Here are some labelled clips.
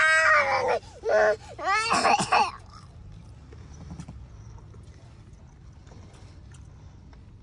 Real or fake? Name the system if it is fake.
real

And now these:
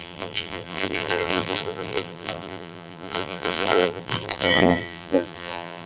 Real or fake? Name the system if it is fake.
fake, vocoder, BigVGAN v2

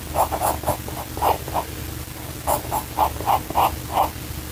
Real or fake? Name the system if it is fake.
real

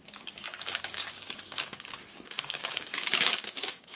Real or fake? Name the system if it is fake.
fake, codec, DAC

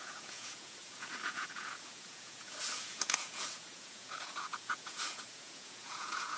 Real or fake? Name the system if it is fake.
fake, vocoder, Vocos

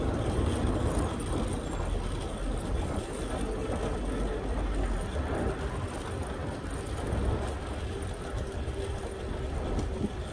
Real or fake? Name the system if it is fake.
real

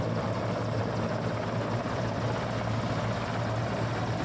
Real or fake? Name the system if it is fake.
real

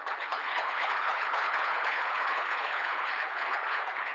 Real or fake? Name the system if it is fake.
fake, codec, HILCodec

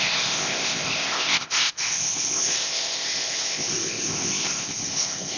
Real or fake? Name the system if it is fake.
fake, codec, ZipCodec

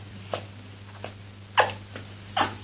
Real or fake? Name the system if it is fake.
real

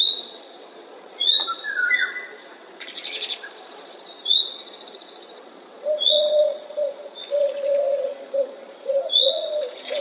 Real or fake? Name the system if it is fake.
fake, vocoder, Vocos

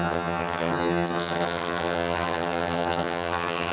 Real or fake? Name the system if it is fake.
fake, vocoder, HiFi-GAN